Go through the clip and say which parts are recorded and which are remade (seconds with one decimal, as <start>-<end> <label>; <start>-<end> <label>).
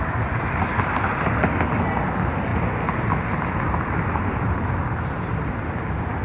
0.0-6.2 recorded